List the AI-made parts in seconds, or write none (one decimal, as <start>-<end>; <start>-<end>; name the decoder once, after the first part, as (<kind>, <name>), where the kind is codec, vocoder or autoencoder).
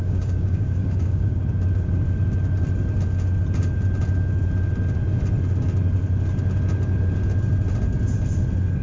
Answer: 0.0-1.4 (codec, DAC)